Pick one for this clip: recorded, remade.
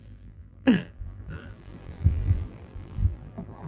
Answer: remade